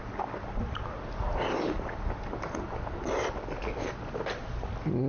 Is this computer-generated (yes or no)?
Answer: no